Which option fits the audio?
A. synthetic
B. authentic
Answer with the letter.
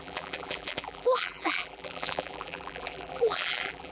A